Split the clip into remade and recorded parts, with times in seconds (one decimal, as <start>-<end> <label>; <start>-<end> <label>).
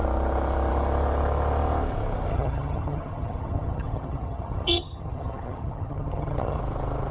0.0-2.3 recorded; 2.3-6.6 remade; 6.6-7.1 recorded